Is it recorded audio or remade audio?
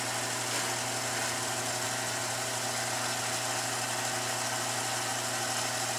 recorded